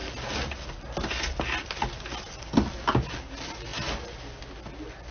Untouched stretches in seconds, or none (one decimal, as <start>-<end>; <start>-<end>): 0.0-5.1